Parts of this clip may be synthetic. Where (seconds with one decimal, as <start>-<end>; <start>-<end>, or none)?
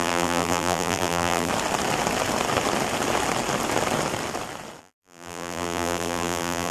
0.0-1.5; 4.8-6.7